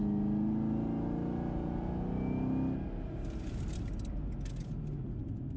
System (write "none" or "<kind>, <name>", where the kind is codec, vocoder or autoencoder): none